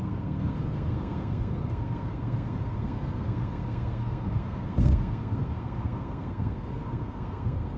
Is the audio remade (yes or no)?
yes